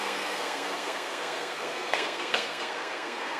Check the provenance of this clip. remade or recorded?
remade